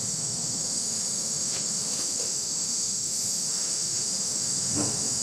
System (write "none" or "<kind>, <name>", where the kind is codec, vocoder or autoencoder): autoencoder, DAC-VAE